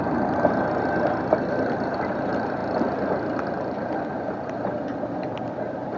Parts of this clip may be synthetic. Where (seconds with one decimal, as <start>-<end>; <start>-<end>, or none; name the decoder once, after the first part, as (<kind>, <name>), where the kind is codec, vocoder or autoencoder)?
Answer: none